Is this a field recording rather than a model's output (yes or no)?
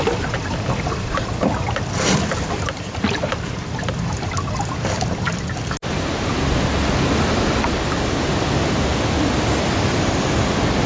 yes